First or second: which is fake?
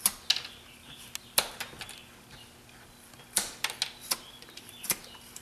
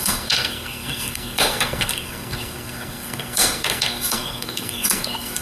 second